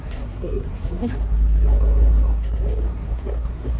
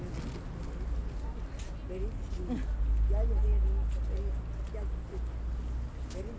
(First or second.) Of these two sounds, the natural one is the second